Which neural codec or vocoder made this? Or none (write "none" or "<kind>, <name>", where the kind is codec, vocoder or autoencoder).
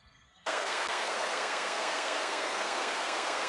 codec, SNAC